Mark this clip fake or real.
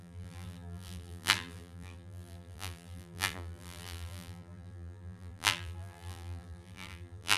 fake